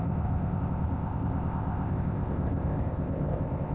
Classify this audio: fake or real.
fake